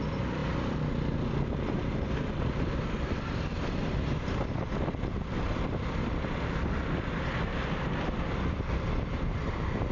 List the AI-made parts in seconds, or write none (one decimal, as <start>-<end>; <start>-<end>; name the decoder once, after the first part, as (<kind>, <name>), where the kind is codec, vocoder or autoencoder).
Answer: none